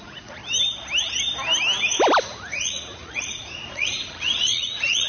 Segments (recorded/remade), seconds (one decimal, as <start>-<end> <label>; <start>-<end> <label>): 0.0-0.4 remade; 0.4-2.2 recorded; 2.2-5.1 remade